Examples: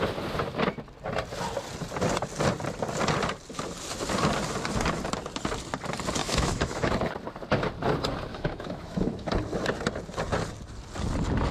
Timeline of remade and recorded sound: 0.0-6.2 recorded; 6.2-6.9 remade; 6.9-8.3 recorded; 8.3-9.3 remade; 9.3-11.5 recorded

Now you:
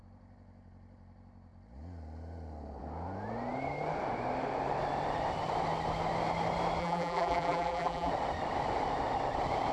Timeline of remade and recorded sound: 0.0-6.8 recorded; 6.8-8.1 remade; 8.1-9.7 recorded

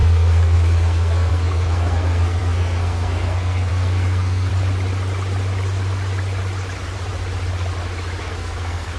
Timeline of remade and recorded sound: 0.0-4.5 remade; 4.5-8.2 recorded; 8.2-9.0 remade

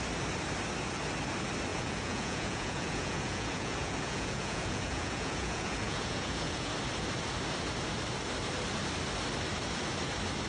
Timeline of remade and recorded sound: 0.0-1.7 recorded; 1.7-6.7 remade; 6.7-10.5 recorded

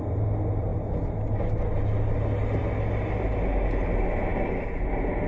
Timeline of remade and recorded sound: 0.0-5.3 recorded